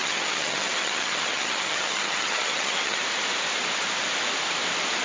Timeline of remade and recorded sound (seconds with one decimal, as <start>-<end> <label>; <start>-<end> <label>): 0.0-3.0 remade; 3.0-5.0 recorded